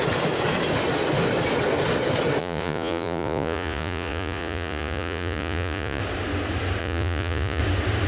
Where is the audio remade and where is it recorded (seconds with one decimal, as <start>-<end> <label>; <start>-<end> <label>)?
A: 0.0-2.4 recorded; 2.4-6.0 remade; 6.0-6.8 recorded; 6.8-7.6 remade; 7.6-8.1 recorded